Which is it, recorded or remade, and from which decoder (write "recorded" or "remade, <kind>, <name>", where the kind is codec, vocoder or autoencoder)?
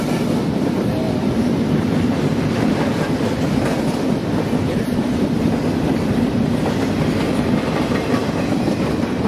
remade, vocoder, BigVGAN v2